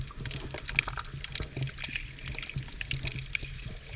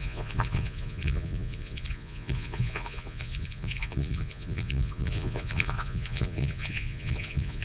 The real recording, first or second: first